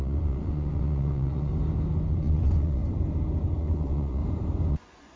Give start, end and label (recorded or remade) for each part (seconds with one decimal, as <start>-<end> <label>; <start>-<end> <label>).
0.0-1.5 remade; 1.5-2.1 recorded; 2.1-2.8 remade; 2.8-3.6 recorded; 3.6-4.2 remade; 4.2-4.7 recorded; 4.7-5.2 remade